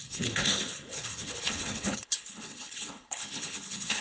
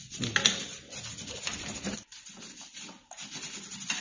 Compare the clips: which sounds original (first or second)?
second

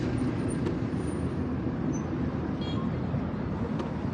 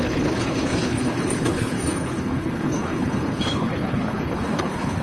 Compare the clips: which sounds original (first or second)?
first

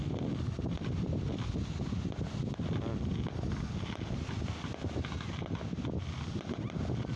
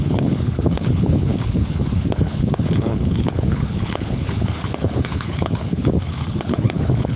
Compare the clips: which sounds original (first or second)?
first